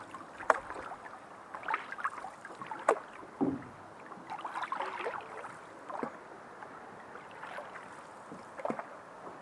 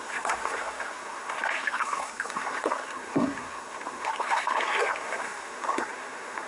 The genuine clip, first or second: first